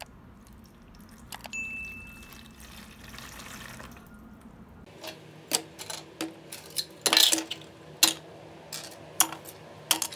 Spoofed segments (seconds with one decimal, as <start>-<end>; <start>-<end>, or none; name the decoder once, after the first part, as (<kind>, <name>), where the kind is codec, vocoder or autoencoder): none